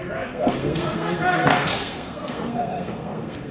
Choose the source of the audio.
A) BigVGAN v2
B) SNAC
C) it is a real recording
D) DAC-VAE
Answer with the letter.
B